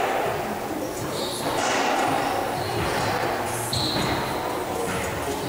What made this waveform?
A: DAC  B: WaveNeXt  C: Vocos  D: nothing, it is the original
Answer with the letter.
D